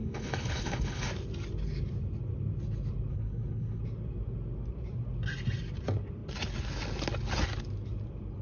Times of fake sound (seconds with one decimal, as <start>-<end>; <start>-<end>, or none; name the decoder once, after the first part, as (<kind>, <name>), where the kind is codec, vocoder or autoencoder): 0.0-1.1 (codec, HILCodec); 3.1-3.8